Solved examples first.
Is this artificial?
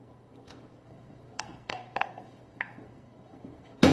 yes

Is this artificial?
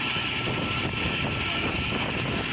no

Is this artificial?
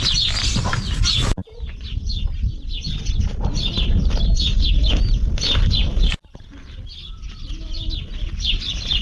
no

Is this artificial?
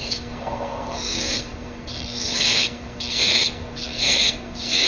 yes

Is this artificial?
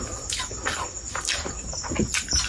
no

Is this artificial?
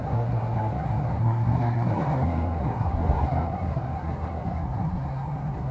yes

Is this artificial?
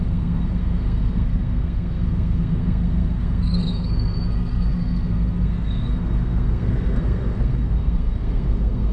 yes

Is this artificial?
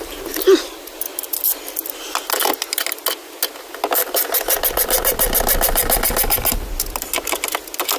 no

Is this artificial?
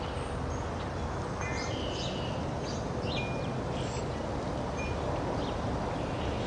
no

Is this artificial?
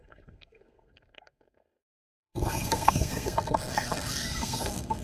yes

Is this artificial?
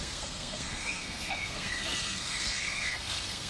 yes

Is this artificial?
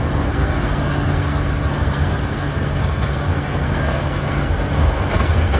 yes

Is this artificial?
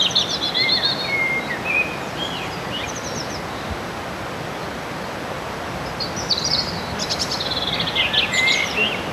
no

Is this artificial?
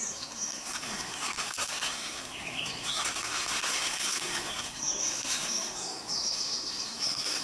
yes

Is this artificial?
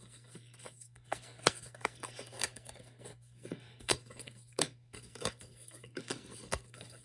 yes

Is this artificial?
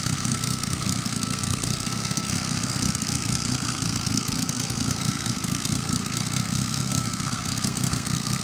yes